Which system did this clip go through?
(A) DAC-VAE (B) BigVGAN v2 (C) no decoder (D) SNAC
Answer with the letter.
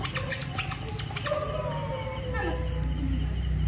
C